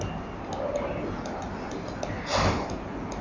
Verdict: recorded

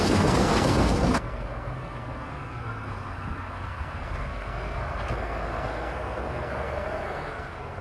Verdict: remade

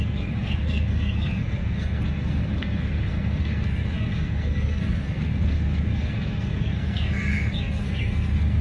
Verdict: remade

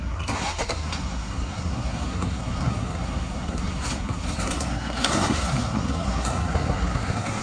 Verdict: remade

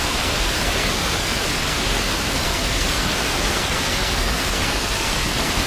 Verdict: remade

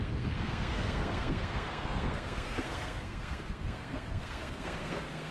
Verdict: remade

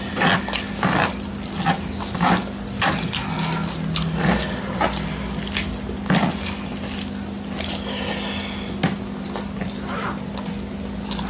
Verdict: recorded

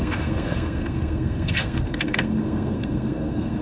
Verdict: remade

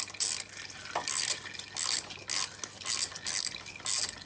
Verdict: recorded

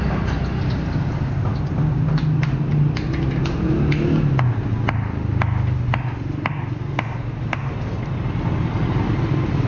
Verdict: recorded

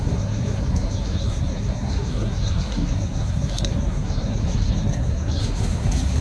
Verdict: remade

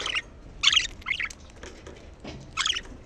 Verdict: recorded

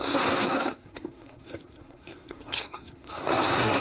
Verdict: remade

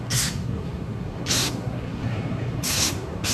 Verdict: remade